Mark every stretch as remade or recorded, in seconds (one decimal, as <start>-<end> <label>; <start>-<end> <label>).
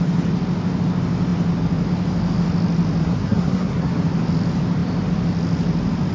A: 0.0-3.0 recorded; 3.0-3.9 remade; 3.9-6.1 recorded